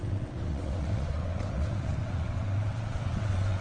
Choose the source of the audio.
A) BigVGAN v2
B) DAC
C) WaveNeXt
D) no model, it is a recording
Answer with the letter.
C